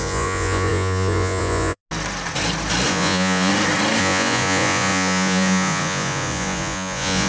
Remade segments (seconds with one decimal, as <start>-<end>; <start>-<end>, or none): 0.0-1.8; 2.9-3.5; 4.0-7.3